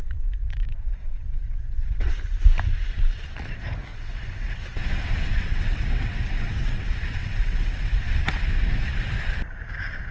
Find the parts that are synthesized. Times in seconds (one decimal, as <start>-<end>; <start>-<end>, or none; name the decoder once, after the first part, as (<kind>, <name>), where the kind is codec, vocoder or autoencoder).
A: 0.4-2.1 (vocoder, WaveNeXt); 3.9-8.9

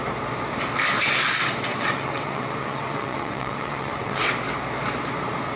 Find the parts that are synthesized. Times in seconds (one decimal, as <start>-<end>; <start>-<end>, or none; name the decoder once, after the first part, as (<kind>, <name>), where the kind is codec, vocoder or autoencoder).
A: 1.7-4.3 (vocoder, WaveNeXt)

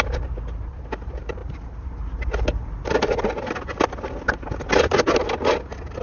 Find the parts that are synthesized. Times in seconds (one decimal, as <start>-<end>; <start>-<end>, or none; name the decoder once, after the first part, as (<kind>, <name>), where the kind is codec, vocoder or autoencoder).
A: none

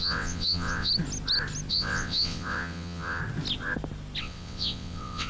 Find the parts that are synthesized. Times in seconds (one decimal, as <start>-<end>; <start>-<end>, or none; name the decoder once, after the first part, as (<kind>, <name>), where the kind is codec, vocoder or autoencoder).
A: 0.0-0.9 (vocoder, WaveNeXt); 1.7-3.2; 4.2-5.3

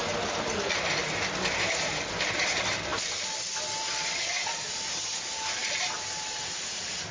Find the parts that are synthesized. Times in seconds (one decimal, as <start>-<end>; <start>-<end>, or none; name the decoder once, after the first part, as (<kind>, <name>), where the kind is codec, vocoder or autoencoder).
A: none

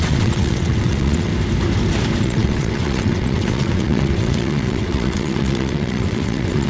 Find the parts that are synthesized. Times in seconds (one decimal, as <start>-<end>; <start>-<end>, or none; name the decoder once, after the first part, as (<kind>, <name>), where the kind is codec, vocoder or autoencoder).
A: 0.0-1.3 (vocoder, WaveNeXt); 2.2-6.7

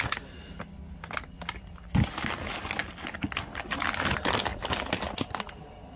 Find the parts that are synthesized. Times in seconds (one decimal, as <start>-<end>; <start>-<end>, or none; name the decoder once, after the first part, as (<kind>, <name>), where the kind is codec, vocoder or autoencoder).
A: none